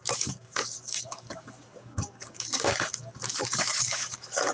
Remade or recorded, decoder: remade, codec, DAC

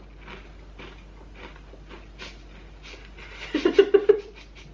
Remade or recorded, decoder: recorded